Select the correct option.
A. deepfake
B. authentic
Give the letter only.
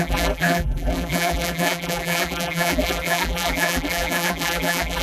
A